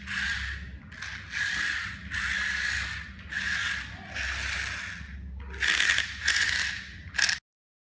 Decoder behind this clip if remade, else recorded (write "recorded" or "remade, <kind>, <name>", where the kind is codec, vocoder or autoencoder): recorded